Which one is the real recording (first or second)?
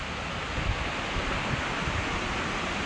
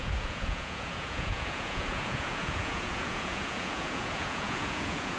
first